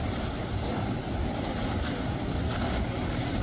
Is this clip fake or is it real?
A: real